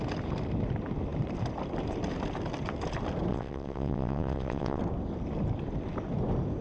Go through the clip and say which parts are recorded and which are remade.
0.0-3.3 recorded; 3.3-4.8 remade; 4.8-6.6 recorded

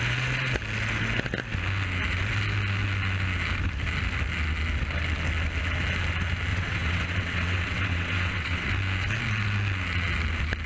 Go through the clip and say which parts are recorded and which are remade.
0.0-6.5 recorded; 6.5-8.7 remade; 8.7-10.7 recorded

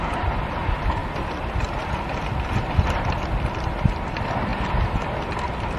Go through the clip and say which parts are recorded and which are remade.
0.0-1.0 recorded; 1.0-3.2 remade; 3.2-5.8 recorded

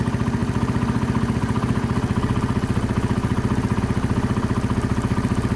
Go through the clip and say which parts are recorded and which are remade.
0.0-5.6 recorded

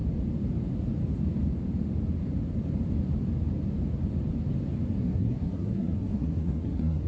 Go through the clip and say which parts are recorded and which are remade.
0.0-5.0 recorded; 5.0-7.1 remade